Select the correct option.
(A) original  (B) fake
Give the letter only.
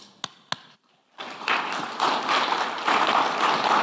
A